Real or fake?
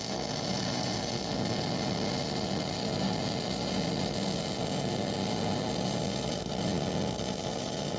real